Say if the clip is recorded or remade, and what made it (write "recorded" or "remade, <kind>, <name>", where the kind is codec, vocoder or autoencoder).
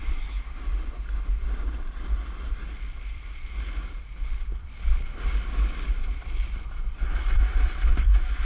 recorded